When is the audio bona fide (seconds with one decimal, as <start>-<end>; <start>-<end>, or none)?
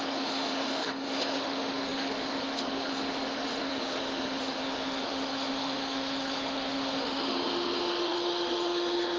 none